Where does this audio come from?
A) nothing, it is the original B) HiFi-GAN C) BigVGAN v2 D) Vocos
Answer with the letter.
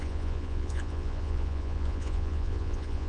D